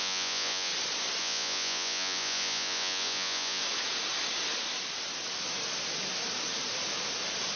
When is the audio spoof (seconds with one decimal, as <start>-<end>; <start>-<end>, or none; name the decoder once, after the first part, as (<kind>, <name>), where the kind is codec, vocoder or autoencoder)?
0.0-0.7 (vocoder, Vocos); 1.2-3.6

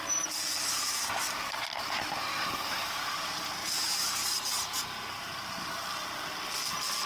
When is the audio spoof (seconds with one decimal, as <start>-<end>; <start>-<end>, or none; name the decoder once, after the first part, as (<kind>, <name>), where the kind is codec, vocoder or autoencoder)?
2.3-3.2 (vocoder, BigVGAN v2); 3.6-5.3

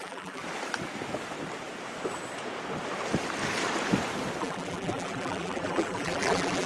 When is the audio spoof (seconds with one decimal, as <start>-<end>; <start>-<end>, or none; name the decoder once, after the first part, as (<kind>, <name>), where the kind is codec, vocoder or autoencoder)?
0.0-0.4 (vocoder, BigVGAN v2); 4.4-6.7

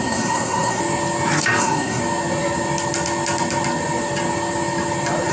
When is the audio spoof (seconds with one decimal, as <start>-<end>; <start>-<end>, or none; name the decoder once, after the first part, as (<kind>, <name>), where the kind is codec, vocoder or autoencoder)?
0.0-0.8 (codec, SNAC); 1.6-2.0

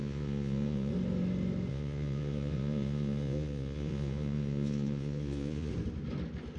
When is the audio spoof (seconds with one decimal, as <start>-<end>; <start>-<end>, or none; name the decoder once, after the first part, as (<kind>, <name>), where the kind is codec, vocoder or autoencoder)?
0.0-0.9 (vocoder, Vocos); 1.7-5.7